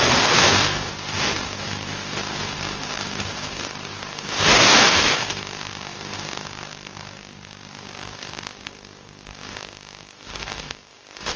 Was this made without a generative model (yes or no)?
no